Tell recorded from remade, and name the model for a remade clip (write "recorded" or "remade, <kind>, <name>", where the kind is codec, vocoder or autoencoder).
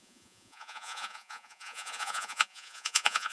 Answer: remade, vocoder, Vocos